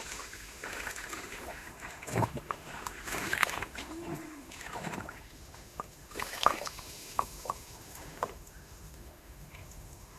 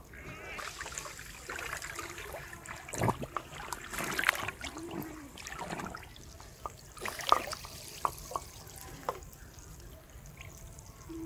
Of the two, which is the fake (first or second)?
first